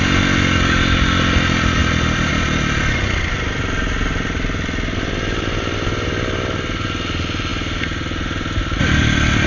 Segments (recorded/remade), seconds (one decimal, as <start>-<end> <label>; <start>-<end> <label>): 0.0-9.5 recorded